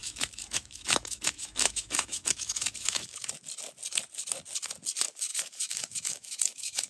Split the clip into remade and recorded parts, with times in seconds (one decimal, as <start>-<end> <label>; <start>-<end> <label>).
0.0-3.3 remade; 3.3-5.3 recorded; 5.3-6.9 remade

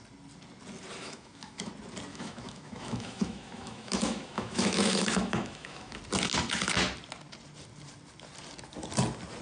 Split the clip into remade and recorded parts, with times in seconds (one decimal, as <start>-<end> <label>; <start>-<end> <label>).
0.0-1.0 recorded; 1.0-1.7 remade; 1.7-2.1 recorded; 2.1-6.0 remade; 6.0-9.4 recorded

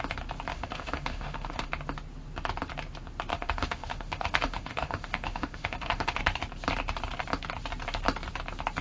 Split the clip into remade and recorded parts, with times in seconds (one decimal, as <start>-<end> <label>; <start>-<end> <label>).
0.0-0.5 recorded; 0.5-1.7 remade; 1.7-3.3 recorded; 3.3-6.2 remade; 6.2-8.8 recorded

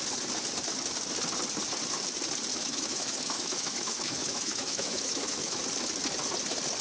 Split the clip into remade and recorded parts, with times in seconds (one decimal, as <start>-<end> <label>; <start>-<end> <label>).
0.0-2.5 recorded; 2.5-5.6 remade; 5.6-6.8 recorded